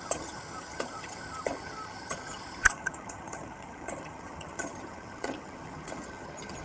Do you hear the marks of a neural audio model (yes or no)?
yes